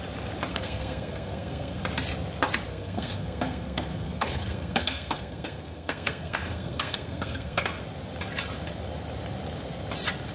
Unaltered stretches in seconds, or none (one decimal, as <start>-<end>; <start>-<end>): 0.0-0.5; 1.8-2.7; 7.8-10.3